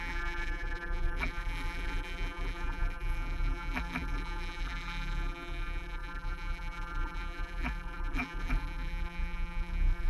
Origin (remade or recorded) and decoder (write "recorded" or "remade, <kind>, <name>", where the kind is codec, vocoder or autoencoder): remade, vocoder, BigVGAN v2